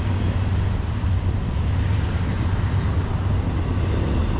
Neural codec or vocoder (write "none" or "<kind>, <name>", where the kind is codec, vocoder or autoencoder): none